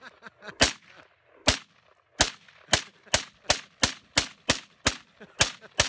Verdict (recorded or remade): recorded